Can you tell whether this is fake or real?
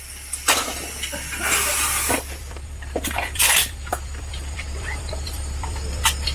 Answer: fake